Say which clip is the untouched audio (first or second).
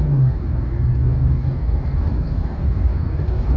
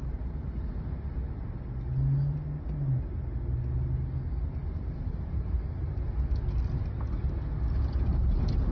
second